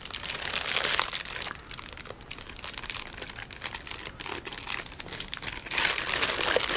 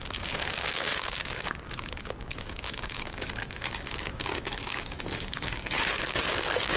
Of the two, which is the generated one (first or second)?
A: second